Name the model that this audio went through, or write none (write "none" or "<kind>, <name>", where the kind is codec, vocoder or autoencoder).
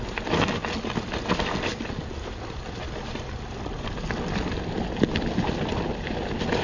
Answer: none